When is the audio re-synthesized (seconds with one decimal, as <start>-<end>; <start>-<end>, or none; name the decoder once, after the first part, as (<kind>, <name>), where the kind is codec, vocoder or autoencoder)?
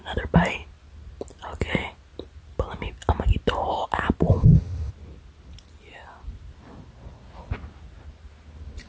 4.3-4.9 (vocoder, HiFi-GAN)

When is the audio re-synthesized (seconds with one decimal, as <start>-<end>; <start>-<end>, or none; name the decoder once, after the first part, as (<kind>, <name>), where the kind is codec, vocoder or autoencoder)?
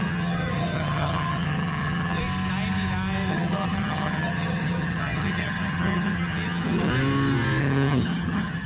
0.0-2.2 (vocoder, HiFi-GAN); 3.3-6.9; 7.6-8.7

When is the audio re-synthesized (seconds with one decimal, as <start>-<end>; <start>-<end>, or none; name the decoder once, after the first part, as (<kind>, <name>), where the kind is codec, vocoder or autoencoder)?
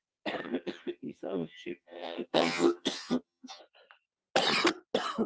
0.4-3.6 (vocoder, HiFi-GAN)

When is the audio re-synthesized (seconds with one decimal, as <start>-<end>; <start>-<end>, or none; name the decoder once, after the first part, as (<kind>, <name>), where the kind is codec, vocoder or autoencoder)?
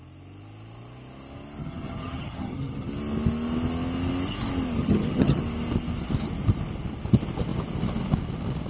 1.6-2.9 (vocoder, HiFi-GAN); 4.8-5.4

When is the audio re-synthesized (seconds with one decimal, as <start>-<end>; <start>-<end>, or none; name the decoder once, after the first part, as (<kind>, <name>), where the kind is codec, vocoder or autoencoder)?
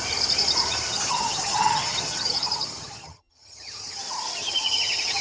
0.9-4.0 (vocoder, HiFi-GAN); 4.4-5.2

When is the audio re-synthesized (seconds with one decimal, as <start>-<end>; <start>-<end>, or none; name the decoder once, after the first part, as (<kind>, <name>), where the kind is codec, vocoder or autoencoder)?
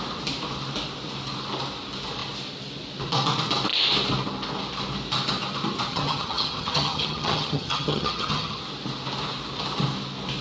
5.9-8.6 (vocoder, HiFi-GAN)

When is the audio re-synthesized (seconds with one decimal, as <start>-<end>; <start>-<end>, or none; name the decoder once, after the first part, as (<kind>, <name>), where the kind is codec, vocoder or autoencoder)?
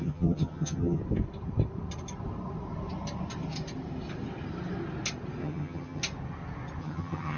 0.0-1.0 (vocoder, HiFi-GAN); 5.4-6.0; 6.8-7.4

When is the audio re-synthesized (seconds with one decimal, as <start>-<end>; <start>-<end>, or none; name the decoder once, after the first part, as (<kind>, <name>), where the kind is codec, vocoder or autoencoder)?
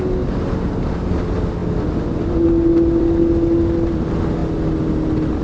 none